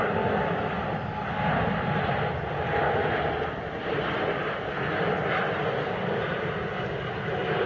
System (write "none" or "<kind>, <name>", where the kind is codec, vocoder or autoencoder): none